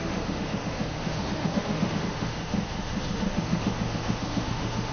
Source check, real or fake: fake